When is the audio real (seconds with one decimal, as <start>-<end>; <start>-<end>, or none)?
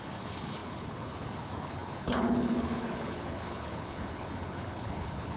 none